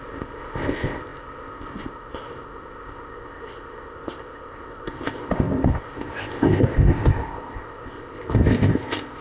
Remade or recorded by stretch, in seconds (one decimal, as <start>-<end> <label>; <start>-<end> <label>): 0.0-9.2 remade